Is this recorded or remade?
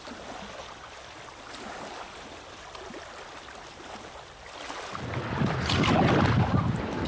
recorded